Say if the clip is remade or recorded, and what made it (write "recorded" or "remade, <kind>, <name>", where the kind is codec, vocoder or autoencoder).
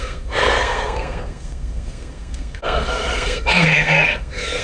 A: remade, codec, SNAC